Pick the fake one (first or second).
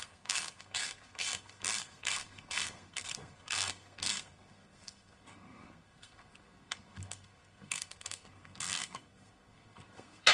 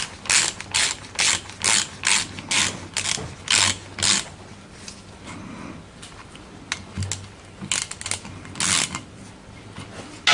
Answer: first